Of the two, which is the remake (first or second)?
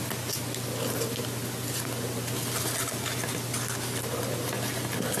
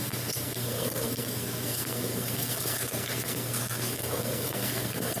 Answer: second